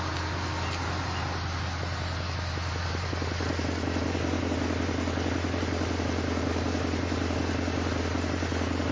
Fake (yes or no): no